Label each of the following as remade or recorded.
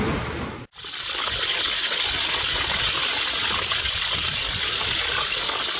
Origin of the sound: recorded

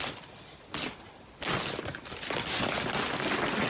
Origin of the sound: recorded